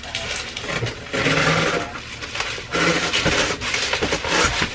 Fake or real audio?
real